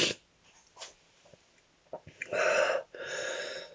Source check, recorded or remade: recorded